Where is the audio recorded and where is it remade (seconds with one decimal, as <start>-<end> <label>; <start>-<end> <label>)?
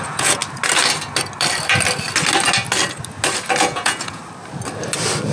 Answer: 0.0-0.4 remade; 0.4-3.6 recorded; 3.6-4.2 remade; 4.2-5.3 recorded